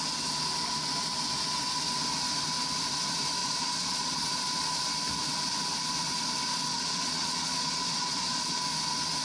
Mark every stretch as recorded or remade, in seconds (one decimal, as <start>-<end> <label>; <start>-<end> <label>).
0.0-3.4 recorded; 3.4-4.3 remade; 4.3-6.7 recorded; 6.7-8.6 remade; 8.6-9.2 recorded

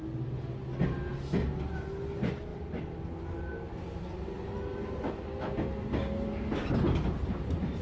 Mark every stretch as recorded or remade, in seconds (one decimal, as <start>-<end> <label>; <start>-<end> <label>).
0.0-7.8 recorded

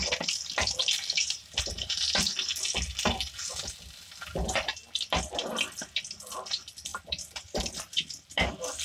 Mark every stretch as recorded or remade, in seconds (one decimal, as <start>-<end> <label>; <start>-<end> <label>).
0.0-1.2 recorded; 1.2-2.0 remade; 2.0-6.9 recorded; 6.9-8.1 remade; 8.1-8.8 recorded

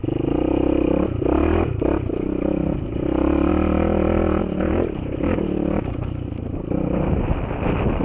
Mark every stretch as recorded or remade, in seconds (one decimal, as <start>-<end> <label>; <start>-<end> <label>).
0.0-4.4 recorded; 4.4-5.8 remade; 5.8-8.0 recorded

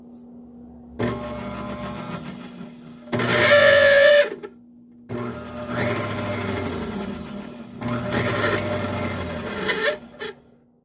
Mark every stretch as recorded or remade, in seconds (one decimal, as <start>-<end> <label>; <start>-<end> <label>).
0.0-3.6 recorded; 3.6-4.1 remade; 4.1-10.8 recorded

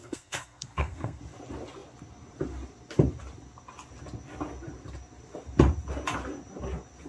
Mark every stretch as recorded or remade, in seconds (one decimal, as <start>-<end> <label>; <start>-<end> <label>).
0.0-1.2 remade; 1.2-7.1 recorded

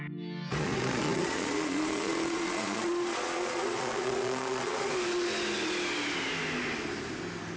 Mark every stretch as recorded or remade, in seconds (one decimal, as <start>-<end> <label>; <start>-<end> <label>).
0.0-0.5 recorded; 0.5-4.9 remade; 4.9-7.6 recorded